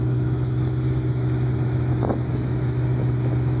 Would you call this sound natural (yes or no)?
no